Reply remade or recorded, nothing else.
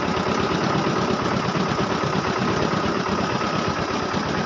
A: recorded